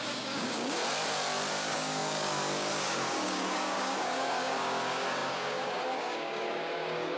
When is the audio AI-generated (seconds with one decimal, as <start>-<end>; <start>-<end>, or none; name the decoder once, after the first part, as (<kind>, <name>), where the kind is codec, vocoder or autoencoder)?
0.0-0.8 (codec, DAC); 1.5-7.2